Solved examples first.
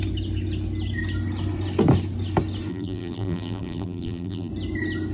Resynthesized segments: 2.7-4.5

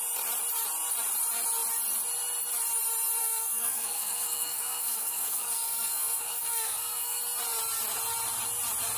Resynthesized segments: 3.2-7.2